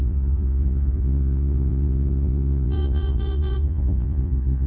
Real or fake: fake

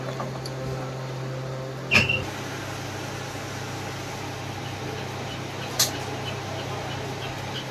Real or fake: real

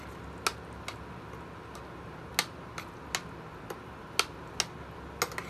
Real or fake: real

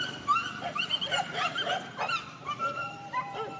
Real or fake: fake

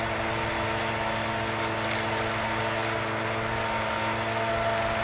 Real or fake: real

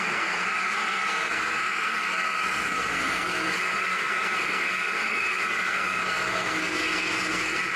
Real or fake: fake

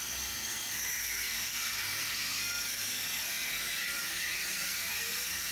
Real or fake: fake